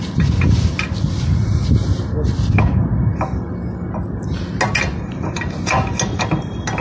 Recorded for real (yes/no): yes